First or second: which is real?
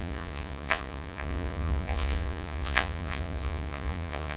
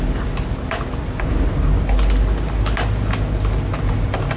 second